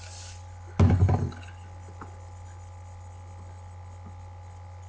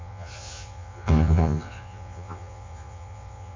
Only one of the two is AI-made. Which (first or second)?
second